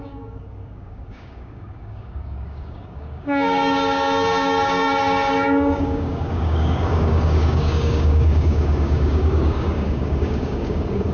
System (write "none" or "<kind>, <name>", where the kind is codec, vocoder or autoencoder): codec, DAC